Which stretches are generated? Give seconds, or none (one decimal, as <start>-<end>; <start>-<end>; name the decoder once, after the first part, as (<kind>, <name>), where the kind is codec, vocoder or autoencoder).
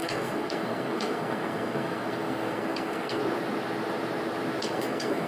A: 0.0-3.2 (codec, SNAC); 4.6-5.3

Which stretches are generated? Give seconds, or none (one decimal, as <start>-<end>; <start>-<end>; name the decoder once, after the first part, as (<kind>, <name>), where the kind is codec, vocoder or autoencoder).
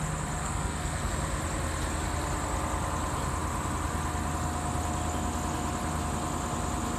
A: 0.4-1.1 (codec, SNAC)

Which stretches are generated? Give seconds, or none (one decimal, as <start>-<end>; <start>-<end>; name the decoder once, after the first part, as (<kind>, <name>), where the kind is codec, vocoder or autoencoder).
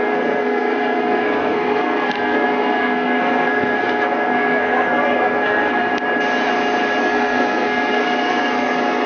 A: 0.0-5.9 (codec, SNAC); 7.0-9.1